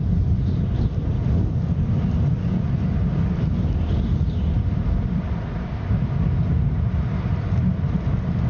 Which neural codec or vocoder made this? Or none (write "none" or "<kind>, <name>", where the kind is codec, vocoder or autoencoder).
none